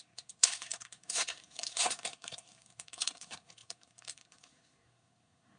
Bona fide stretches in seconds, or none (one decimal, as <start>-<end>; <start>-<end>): none